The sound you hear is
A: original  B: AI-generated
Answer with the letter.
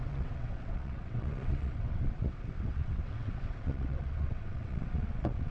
B